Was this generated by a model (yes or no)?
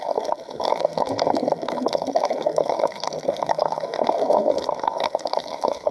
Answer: yes